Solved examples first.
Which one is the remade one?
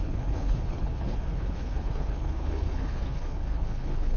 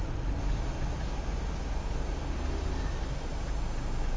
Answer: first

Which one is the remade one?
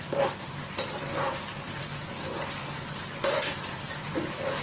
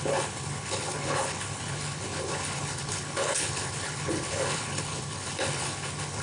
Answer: second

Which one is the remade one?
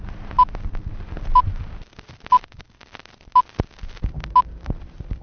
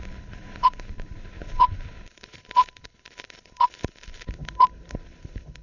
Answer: second